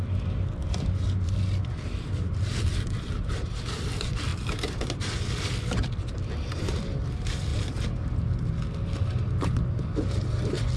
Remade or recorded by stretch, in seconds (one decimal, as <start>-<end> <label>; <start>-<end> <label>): 0.0-7.5 remade; 7.5-9.8 recorded; 9.8-10.8 remade